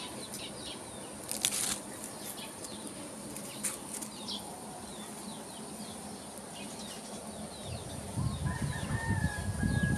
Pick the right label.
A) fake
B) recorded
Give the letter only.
B